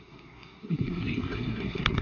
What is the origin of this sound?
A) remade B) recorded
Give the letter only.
A